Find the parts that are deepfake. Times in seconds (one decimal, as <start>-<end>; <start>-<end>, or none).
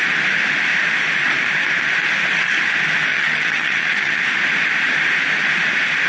3.1-4.2